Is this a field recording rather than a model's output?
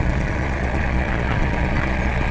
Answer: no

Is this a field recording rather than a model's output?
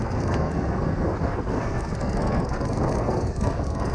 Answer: no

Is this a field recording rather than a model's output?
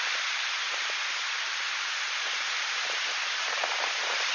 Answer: yes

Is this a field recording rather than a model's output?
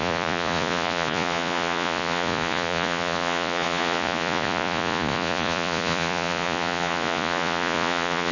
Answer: no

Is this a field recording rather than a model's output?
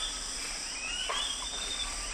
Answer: yes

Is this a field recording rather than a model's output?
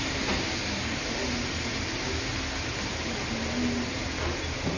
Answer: yes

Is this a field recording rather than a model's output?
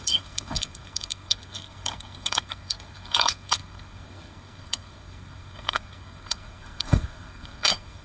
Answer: no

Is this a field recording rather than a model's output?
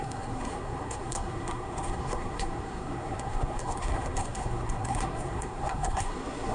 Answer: no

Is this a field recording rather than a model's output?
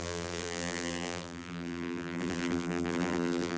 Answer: no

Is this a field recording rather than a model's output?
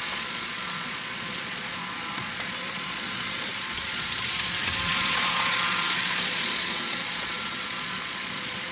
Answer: no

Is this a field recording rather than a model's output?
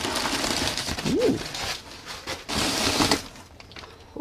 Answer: yes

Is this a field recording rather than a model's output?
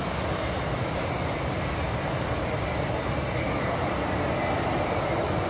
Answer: yes